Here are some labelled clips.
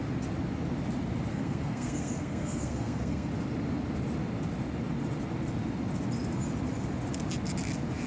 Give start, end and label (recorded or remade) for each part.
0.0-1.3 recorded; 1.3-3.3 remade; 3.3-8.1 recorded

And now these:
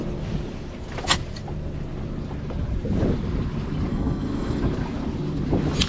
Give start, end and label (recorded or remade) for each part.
0.0-3.9 recorded; 3.9-4.6 remade; 4.6-5.9 recorded

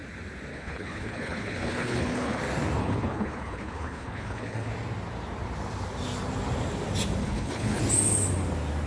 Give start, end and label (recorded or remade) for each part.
0.0-0.5 recorded; 0.5-2.4 remade; 2.4-2.8 recorded; 2.8-4.7 remade; 4.7-7.2 recorded; 7.2-7.8 remade; 7.8-8.9 recorded

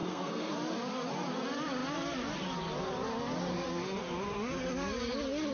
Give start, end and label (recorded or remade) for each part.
0.0-0.5 remade; 0.5-5.5 recorded

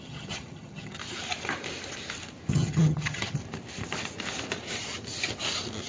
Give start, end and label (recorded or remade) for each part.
0.0-1.0 remade; 1.0-2.5 recorded; 2.5-3.4 remade; 3.4-5.9 recorded

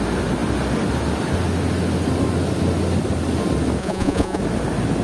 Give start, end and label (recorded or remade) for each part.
0.0-3.8 recorded; 3.8-4.4 remade; 4.4-5.0 recorded

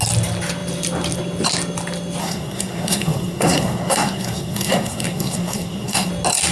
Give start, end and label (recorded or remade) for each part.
0.0-2.2 recorded; 2.2-6.1 remade; 6.1-6.5 recorded